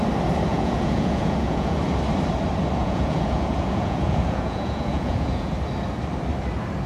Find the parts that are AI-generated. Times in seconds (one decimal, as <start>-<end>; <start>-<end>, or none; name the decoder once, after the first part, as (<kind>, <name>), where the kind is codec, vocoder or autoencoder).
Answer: 0.5-1.8 (vocoder, Vocos); 2.8-5.5